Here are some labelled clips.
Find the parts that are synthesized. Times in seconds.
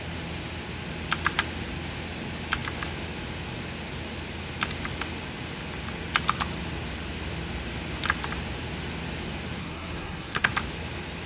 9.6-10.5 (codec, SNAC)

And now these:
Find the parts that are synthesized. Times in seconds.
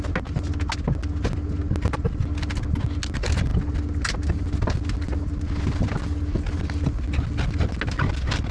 none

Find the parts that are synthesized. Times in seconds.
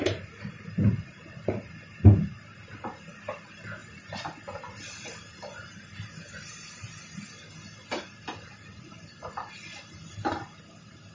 none